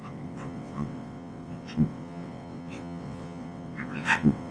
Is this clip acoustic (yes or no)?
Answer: no